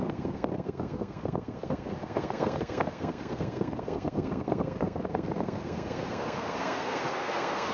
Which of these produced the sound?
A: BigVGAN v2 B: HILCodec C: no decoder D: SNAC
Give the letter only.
D